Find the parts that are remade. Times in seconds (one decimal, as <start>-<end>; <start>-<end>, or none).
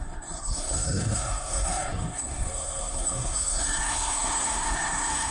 0.0-5.3